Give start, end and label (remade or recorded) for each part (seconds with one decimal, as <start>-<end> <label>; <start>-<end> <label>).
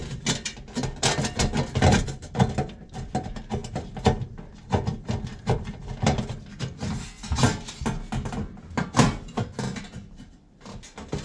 0.0-5.3 recorded; 5.3-6.9 remade; 6.9-11.2 recorded